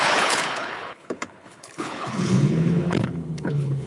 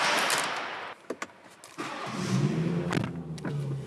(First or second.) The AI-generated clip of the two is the first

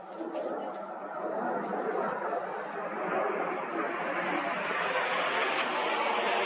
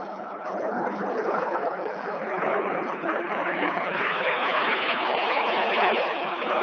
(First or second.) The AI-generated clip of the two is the second